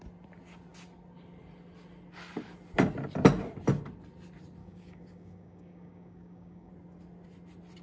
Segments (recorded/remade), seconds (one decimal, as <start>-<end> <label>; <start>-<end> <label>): 0.0-4.6 recorded; 4.6-6.7 remade; 6.7-7.8 recorded